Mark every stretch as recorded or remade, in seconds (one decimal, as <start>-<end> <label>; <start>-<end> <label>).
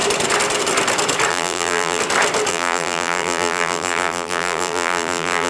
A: 0.0-1.3 recorded; 1.3-2.0 remade; 2.0-2.5 recorded; 2.5-5.5 remade